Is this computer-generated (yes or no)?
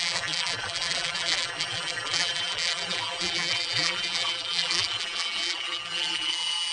yes